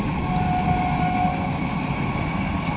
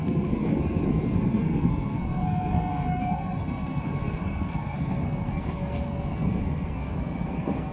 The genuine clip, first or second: first